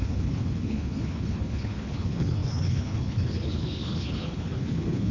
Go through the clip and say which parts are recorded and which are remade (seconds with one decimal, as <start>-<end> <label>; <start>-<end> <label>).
0.0-5.1 remade